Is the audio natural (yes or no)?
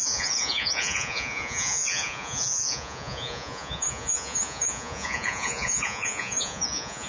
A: no